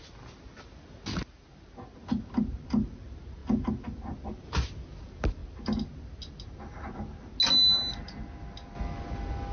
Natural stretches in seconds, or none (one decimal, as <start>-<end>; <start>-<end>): 0.0-9.5